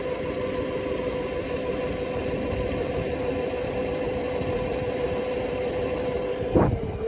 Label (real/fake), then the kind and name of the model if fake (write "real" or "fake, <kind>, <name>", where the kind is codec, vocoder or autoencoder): real